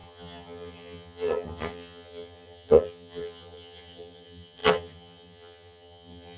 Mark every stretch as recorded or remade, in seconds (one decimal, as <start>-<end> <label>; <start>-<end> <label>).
0.0-6.4 remade